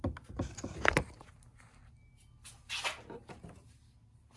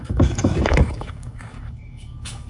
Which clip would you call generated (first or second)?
second